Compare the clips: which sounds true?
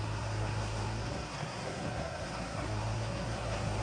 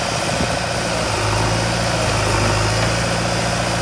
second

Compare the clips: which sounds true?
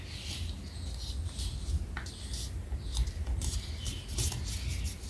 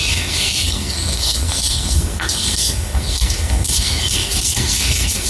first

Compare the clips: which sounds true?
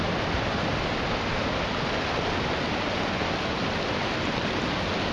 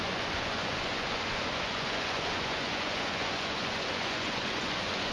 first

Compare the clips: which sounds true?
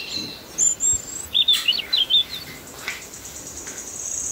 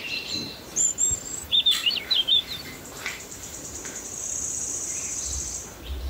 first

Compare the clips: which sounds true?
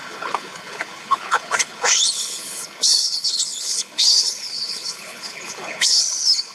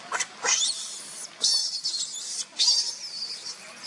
second